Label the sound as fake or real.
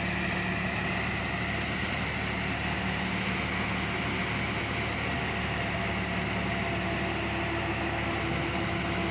real